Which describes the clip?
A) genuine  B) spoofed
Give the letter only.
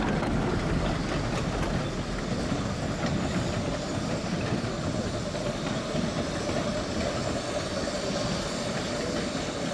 A